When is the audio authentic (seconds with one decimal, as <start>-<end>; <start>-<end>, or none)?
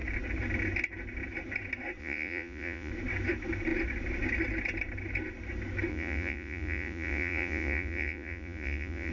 0.0-2.0; 2.9-5.9